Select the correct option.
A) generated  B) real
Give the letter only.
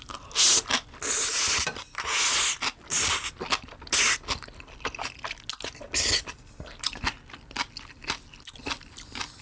B